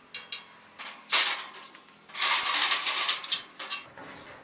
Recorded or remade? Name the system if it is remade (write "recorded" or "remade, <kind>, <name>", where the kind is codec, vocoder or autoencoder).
recorded